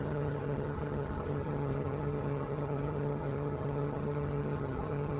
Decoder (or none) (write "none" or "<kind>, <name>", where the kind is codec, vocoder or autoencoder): vocoder, HiFi-GAN